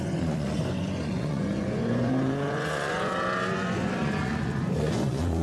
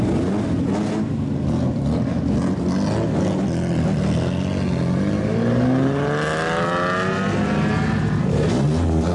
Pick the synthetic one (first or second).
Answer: first